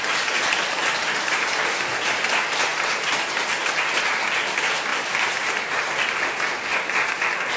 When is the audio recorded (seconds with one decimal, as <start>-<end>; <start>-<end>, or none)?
0.0-2.7; 3.5-7.6